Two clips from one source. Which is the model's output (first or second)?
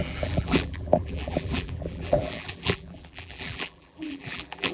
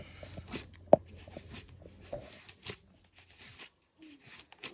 first